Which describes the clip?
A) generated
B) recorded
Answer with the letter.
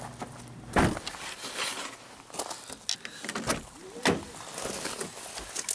B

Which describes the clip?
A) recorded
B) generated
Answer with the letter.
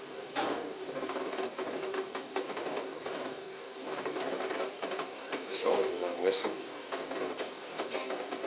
B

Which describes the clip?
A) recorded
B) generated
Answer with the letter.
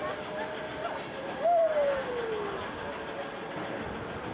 A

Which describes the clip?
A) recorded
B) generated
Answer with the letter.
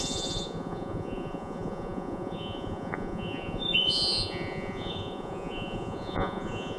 B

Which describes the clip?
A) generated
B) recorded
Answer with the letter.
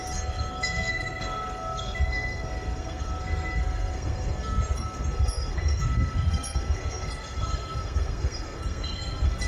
A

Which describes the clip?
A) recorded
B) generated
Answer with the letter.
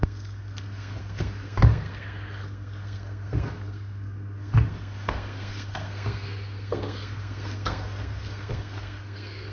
B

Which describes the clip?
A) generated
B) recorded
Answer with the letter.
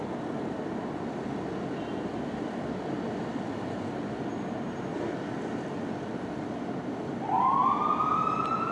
B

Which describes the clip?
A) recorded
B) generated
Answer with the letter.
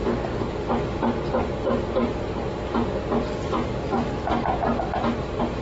A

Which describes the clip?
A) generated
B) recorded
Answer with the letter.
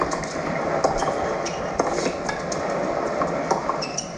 B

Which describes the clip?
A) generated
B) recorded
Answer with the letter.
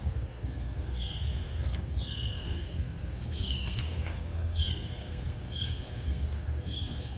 A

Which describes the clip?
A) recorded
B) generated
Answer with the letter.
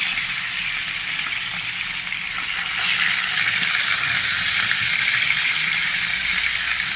A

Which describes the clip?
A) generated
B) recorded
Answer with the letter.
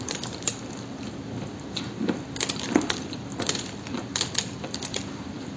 B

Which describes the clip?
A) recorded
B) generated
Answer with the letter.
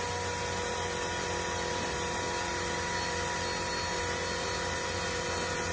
A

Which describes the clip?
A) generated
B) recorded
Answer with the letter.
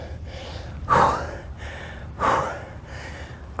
A